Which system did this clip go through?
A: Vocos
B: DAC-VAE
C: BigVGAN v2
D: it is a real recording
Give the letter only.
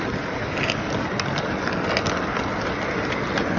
D